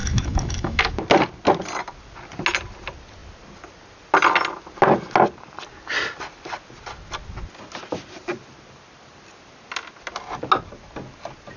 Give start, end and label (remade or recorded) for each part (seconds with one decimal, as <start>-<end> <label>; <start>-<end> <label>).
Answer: 0.0-0.8 remade; 0.8-11.6 recorded